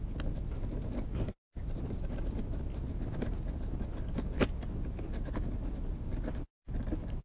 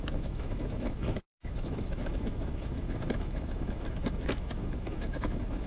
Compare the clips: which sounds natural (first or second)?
first